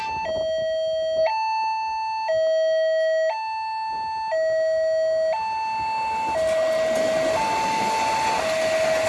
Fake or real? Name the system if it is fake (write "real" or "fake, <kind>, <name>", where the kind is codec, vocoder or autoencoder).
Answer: real